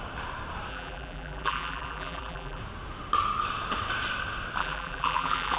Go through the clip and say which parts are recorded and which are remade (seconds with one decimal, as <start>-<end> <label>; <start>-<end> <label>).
0.0-0.7 recorded; 0.7-2.6 remade; 2.6-4.6 recorded; 4.6-5.6 remade